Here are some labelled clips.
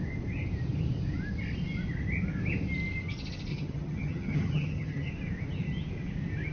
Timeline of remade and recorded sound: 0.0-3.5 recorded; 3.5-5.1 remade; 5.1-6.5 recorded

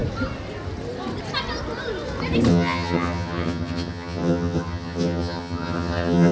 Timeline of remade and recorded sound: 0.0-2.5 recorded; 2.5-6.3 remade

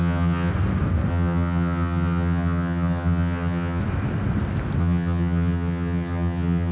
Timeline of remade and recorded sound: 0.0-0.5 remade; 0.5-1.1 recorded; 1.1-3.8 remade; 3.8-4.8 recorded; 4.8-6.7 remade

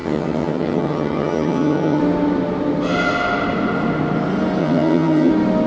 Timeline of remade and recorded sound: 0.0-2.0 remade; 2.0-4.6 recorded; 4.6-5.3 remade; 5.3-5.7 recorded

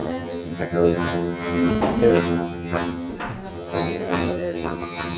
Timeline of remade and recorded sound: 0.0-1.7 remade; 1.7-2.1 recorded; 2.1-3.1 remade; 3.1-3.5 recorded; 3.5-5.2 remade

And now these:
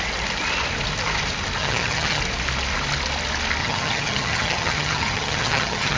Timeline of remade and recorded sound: 0.0-1.6 recorded; 1.6-2.2 remade; 2.2-3.6 recorded; 3.6-6.0 remade